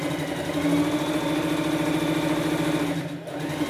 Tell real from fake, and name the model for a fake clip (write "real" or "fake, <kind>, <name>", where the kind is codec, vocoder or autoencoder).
real